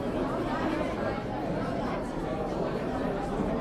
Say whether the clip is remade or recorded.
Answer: remade